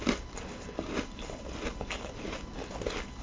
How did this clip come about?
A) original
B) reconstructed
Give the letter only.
A